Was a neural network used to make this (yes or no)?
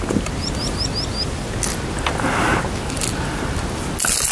no